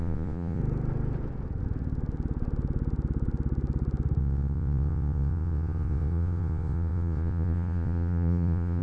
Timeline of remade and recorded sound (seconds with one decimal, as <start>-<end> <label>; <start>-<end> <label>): 0.0-0.6 remade; 0.6-4.2 recorded; 4.2-8.8 remade

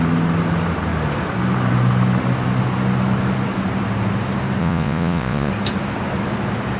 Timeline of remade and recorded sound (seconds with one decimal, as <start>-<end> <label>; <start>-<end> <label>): 0.0-4.6 recorded; 4.6-5.5 remade; 5.5-6.8 recorded